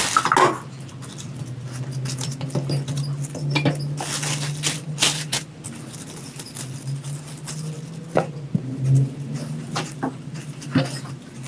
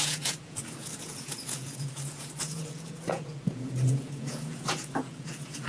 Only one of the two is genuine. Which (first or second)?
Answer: first